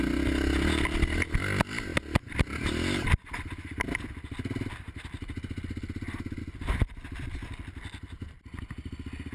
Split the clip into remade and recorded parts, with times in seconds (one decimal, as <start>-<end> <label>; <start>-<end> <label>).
0.0-9.3 recorded